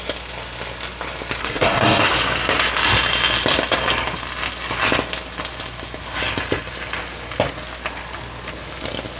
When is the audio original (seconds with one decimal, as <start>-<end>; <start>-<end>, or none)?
0.0-1.4; 2.1-9.2